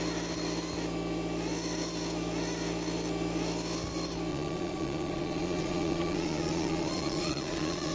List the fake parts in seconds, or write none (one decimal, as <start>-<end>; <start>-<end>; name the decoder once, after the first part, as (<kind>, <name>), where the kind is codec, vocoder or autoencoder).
4.3-7.9 (vocoder, Vocos)